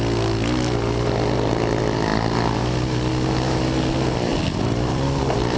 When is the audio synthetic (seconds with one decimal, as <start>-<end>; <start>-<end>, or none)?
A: 4.3-5.6